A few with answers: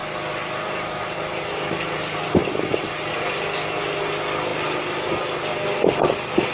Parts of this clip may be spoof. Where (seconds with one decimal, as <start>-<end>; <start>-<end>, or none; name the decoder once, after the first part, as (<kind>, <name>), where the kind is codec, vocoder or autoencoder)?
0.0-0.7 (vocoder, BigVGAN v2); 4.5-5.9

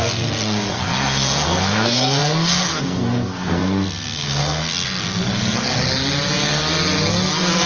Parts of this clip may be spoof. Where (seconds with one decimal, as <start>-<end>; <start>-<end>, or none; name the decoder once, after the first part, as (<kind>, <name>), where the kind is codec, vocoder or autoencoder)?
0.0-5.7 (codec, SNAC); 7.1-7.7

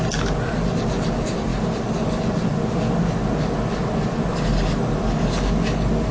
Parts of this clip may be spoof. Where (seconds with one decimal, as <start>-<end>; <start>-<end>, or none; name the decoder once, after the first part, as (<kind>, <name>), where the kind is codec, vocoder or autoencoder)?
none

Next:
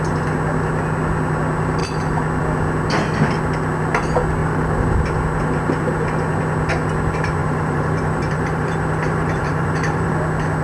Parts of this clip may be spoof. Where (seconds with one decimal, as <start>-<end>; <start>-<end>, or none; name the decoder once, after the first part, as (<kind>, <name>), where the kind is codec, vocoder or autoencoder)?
4.4-5.0 (vocoder, BigVGAN v2); 7.4-10.1

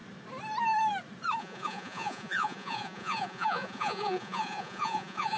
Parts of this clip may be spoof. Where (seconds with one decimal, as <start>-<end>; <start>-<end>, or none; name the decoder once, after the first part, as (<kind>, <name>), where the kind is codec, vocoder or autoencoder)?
1.4-5.4 (vocoder, Vocos)

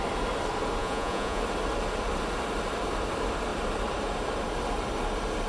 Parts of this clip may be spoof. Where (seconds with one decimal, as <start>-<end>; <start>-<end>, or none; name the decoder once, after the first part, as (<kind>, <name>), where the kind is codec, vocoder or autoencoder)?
0.8-1.4 (vocoder, Vocos)

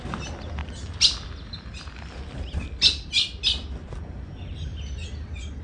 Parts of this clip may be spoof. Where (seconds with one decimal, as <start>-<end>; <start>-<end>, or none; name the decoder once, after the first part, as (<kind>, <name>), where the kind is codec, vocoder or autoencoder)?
0.0-0.6 (vocoder, BigVGAN v2); 4.0-5.0

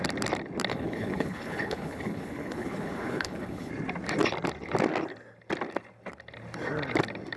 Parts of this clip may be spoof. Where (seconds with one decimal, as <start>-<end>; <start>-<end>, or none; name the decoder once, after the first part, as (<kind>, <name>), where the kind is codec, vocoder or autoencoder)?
0.7-3.7 (codec, HILCodec)